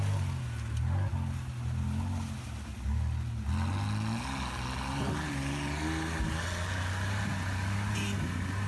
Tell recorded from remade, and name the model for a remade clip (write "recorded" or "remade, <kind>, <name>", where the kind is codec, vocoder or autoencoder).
recorded